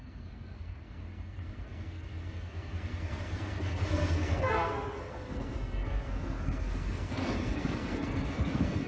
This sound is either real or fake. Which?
fake